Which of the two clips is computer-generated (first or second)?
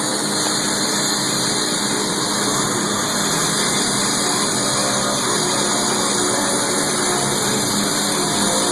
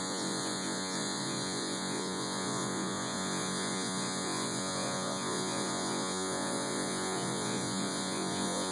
second